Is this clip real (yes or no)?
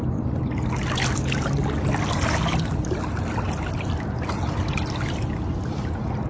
yes